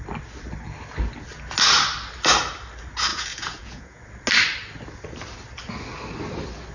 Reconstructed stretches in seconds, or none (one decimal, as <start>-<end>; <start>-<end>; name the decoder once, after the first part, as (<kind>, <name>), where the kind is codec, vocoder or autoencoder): 3.1-4.0 (vocoder, Vocos)